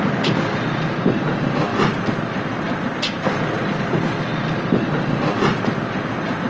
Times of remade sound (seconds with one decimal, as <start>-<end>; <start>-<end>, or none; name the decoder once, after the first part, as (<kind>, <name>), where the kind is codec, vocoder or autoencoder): none